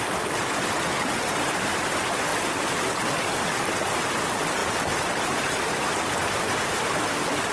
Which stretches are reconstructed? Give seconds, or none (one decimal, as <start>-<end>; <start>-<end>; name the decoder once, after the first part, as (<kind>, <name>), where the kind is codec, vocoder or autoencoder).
none